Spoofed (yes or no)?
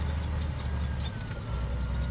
no